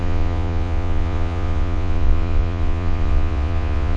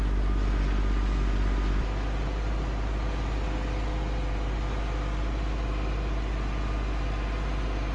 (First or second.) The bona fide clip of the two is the second